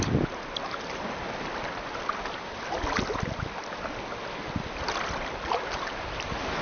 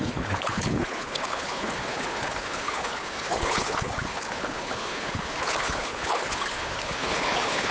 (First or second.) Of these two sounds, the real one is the first